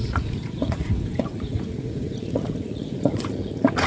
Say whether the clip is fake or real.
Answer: fake